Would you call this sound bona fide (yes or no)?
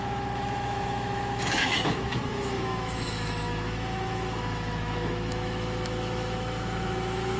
no